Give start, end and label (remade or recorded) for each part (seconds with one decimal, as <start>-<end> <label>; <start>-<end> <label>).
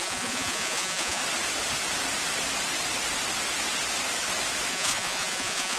0.0-1.2 remade; 1.2-4.7 recorded; 4.7-5.8 remade